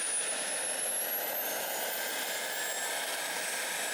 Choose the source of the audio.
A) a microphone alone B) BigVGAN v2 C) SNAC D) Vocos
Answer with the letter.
A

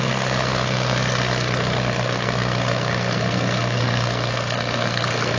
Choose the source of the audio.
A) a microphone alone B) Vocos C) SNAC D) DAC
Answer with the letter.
C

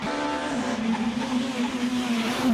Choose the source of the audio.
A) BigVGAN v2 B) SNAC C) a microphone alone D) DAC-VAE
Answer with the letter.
C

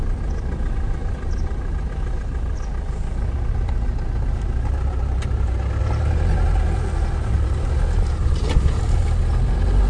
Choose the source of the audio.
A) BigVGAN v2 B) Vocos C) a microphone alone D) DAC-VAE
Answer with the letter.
C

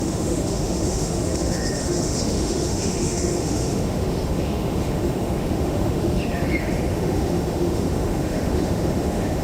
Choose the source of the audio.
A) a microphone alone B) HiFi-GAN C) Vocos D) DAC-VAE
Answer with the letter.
D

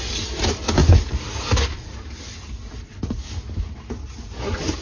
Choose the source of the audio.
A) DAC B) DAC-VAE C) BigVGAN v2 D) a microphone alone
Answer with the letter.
D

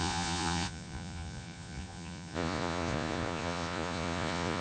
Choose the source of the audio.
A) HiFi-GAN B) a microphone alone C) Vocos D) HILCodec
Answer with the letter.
C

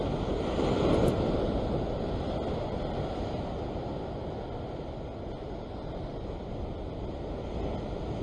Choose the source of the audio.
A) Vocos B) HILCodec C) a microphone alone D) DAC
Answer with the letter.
C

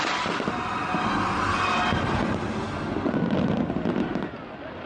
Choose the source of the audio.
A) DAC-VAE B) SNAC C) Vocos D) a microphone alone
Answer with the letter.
D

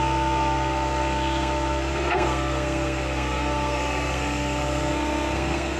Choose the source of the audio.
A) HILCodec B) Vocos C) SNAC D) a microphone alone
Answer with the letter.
C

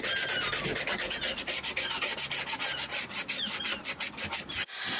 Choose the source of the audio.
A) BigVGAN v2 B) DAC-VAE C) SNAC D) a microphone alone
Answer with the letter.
D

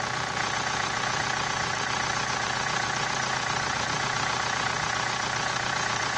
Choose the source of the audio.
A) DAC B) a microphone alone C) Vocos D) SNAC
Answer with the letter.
C